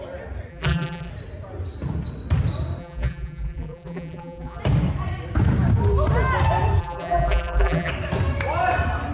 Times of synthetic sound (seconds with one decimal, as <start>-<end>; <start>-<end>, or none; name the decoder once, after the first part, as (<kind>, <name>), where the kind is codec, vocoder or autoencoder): 0.5-1.1 (vocoder, BigVGAN v2); 2.8-4.6; 6.8-7.9